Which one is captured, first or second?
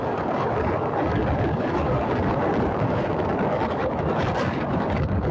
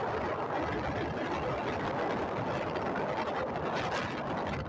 second